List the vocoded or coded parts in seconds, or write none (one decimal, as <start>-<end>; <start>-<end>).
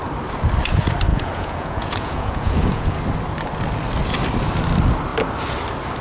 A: 1.1-3.0